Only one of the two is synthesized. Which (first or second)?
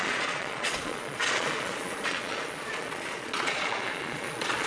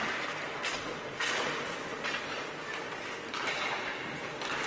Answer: first